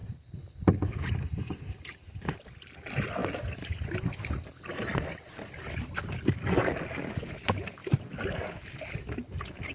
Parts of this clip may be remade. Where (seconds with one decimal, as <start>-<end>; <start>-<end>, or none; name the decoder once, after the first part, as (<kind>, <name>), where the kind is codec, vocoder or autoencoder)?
none